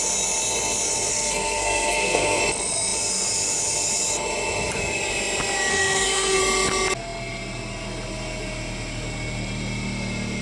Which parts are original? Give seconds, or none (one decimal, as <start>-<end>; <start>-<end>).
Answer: 0.0-1.1; 2.4-5.7; 6.4-10.4